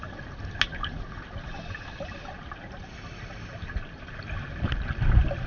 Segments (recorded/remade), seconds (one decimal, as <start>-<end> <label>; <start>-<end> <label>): 0.0-5.5 recorded